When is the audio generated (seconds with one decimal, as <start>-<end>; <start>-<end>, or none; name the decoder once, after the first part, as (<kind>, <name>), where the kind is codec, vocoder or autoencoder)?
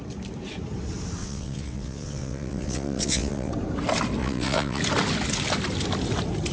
1.2-3.5 (vocoder, WaveNeXt); 4.2-4.8